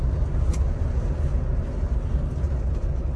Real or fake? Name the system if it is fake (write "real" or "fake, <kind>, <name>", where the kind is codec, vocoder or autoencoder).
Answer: real